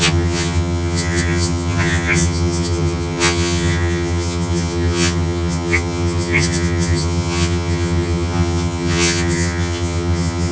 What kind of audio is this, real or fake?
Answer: fake